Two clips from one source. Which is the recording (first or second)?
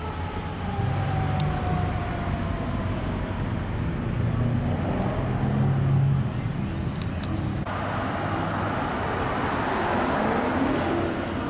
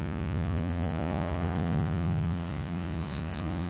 first